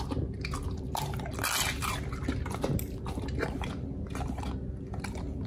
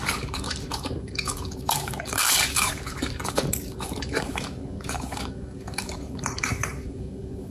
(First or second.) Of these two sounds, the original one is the first